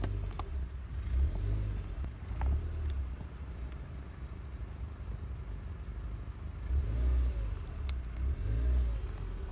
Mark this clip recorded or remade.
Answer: recorded